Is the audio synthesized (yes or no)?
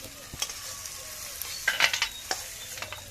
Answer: no